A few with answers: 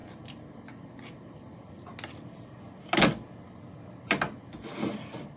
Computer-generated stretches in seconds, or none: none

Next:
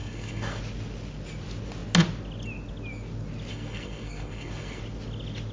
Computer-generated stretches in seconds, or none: 0.0-0.6 (codec, SNAC); 3.5-4.8

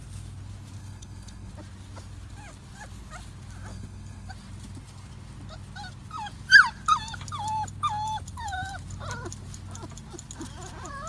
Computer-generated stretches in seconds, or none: 0.8-1.5 (codec, HILCodec); 3.7-4.3

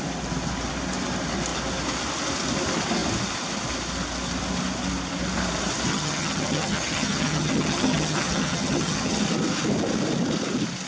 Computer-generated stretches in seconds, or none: 5.9-9.2 (vocoder, HiFi-GAN)